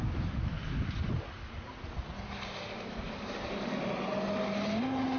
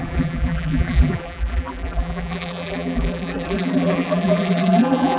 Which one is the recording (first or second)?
first